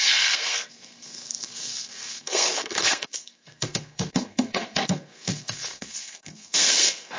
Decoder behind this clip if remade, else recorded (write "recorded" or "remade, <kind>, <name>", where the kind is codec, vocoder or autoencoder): remade, codec, SNAC